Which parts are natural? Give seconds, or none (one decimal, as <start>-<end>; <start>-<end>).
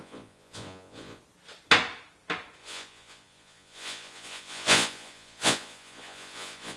1.2-2.6